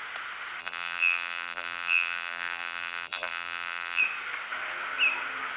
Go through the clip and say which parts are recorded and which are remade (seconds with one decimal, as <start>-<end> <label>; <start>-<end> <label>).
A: 0.0-0.6 recorded; 0.6-4.0 remade; 4.0-5.6 recorded